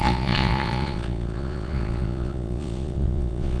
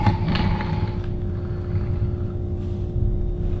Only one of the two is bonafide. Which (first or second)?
second